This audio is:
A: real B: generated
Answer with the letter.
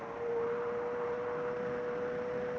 A